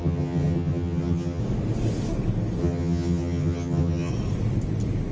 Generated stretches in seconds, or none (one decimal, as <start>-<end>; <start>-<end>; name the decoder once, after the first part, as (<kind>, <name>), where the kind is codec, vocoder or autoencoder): 0.0-1.4 (vocoder, HiFi-GAN); 2.6-4.1